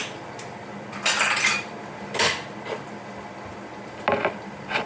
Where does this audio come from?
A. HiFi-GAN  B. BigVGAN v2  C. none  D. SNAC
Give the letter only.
C